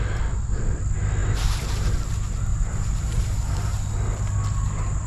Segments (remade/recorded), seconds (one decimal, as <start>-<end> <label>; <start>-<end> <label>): 0.0-1.2 recorded; 1.2-1.9 remade; 1.9-2.5 recorded; 2.5-3.9 remade; 3.9-5.1 recorded